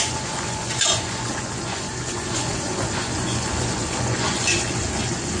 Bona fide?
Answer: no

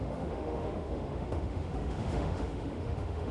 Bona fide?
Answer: no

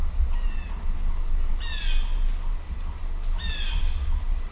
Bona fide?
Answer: yes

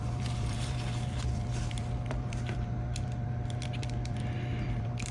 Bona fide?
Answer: no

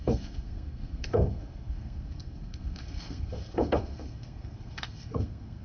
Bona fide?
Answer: no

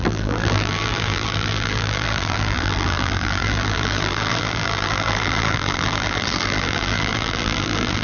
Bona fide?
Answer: no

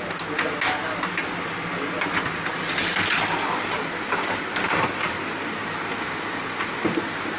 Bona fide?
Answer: yes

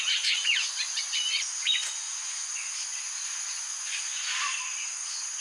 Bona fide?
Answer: no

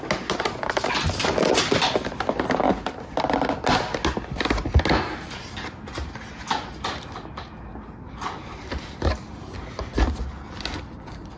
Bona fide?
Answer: yes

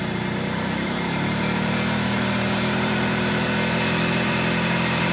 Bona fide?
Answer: no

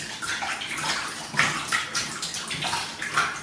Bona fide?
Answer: yes